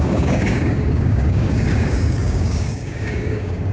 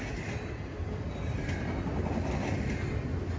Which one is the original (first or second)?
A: second